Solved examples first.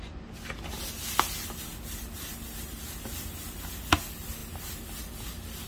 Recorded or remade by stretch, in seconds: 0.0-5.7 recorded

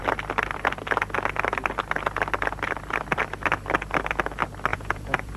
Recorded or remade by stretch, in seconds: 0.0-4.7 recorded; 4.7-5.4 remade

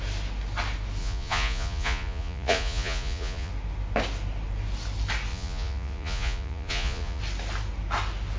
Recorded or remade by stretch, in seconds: 0.0-1.0 recorded; 1.0-3.5 remade; 3.5-5.3 recorded; 5.3-7.2 remade; 7.2-8.4 recorded